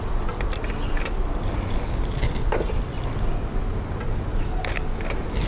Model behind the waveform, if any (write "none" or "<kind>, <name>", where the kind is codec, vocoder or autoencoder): none